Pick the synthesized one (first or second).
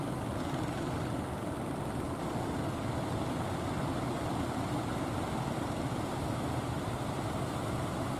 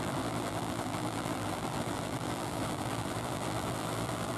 second